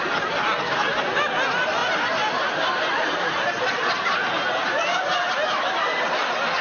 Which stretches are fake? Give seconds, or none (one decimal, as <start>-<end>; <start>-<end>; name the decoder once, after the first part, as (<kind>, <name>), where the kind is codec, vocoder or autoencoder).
none